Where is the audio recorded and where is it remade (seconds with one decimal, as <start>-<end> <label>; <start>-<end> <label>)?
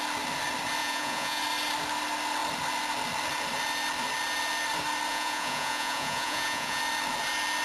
0.0-0.8 recorded; 0.8-1.4 remade; 1.4-5.1 recorded; 5.1-6.8 remade; 6.8-7.6 recorded